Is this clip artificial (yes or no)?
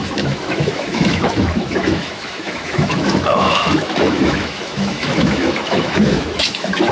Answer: yes